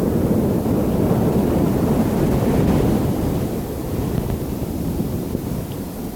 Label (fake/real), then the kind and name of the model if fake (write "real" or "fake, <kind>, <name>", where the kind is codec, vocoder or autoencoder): real